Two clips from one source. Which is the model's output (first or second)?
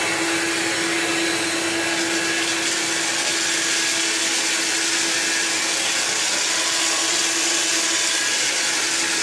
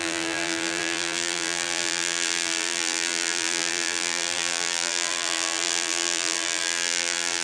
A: second